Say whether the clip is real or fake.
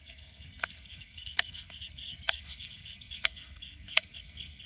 fake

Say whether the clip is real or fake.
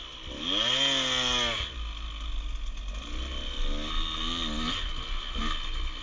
real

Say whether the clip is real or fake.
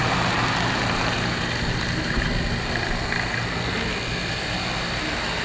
real